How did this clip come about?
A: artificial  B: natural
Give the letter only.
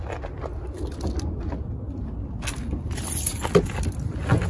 B